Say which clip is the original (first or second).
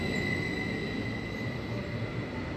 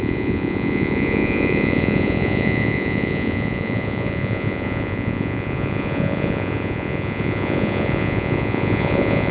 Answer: first